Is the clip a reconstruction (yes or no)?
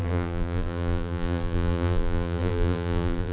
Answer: yes